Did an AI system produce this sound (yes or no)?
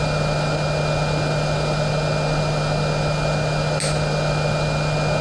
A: no